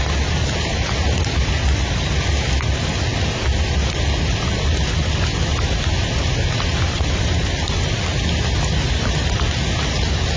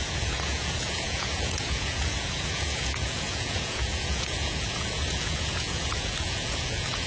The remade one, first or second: second